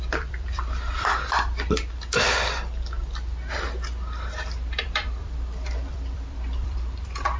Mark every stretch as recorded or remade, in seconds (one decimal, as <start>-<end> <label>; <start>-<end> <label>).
0.0-1.1 remade; 1.1-4.8 recorded; 4.8-7.4 remade